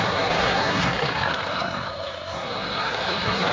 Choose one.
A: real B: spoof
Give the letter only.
B